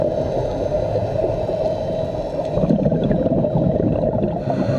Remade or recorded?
recorded